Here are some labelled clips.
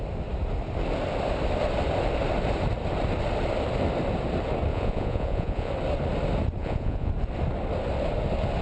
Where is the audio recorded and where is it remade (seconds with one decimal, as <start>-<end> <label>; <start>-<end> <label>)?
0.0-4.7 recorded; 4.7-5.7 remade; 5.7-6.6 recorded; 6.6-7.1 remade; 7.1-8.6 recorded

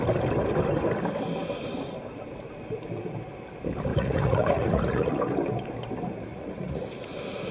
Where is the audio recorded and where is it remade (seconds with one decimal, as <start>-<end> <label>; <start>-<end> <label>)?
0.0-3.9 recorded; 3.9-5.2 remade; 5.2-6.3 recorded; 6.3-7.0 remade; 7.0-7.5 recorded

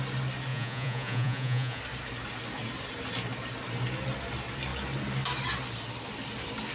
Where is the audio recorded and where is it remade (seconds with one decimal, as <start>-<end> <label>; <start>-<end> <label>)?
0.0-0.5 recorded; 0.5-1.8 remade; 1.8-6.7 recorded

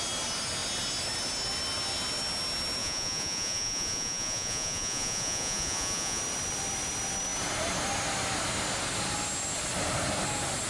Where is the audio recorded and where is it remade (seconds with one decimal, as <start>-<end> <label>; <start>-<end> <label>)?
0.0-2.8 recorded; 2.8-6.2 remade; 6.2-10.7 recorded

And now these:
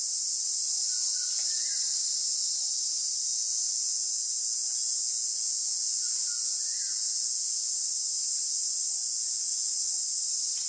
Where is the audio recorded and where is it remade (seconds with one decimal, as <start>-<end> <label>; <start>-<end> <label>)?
0.0-0.8 recorded; 0.8-1.7 remade; 1.7-3.3 recorded; 3.3-7.7 remade; 7.7-9.0 recorded; 9.0-9.7 remade; 9.7-10.7 recorded